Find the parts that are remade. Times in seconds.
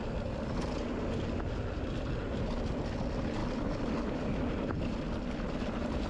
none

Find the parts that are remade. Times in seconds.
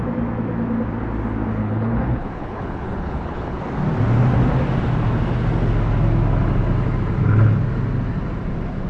1.6-3.6 (codec, HILCodec)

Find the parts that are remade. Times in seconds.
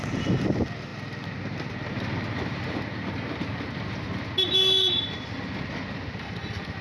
none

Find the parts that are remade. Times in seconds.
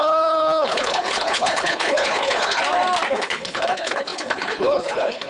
0.0-2.6 (codec, HILCodec); 3.1-5.3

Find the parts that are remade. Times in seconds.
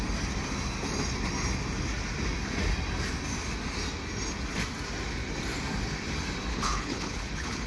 6.5-7.7 (codec, HILCodec)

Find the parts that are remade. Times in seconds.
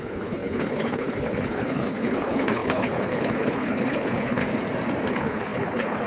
0.0-4.4 (codec, HILCodec); 5.1-6.1